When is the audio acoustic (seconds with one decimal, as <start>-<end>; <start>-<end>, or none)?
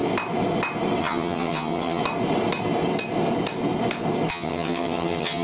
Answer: 0.0-1.0; 2.0-4.3